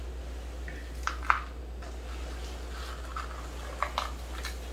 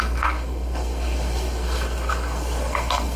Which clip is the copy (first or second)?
second